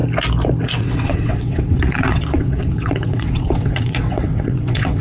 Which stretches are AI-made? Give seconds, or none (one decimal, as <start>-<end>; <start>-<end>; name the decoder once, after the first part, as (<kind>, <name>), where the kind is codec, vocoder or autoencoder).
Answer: 0.8-5.0 (vocoder, WaveNeXt)